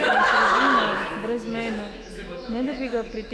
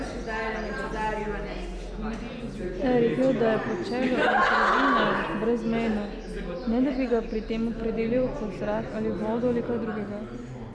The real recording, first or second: second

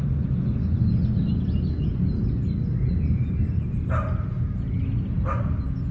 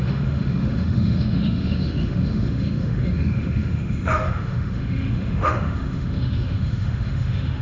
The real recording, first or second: first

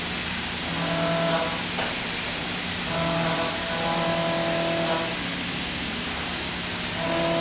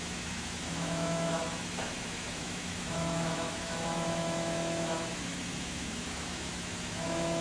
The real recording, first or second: first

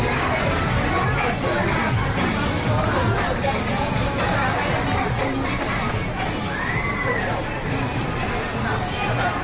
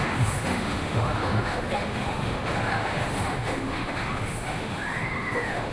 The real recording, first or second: first